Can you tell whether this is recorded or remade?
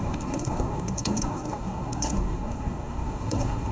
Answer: remade